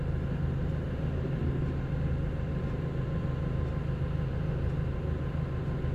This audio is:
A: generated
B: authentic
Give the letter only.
B